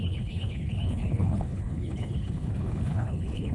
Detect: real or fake fake